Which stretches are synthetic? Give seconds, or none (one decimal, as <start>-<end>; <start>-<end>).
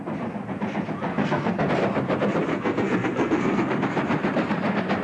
1.1-1.7; 2.5-3.7